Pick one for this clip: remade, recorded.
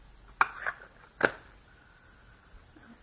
recorded